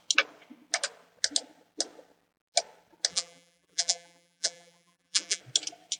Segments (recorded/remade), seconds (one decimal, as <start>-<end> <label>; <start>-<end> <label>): 0.0-3.1 recorded; 3.1-5.4 remade; 5.4-6.0 recorded